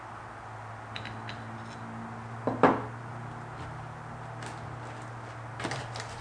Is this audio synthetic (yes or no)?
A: no